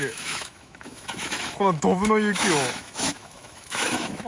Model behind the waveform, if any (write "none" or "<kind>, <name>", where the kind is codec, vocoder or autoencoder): autoencoder, DAC-VAE